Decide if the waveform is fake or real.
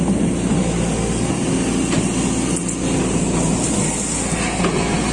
real